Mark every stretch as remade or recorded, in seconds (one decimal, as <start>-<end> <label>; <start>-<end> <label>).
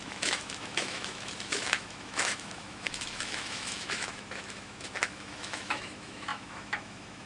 0.0-7.3 remade